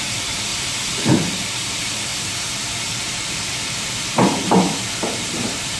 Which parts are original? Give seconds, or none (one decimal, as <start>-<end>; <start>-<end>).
0.5-1.1; 2.1-3.1